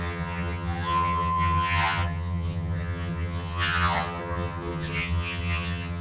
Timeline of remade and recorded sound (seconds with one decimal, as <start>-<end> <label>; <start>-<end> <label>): 0.0-6.0 remade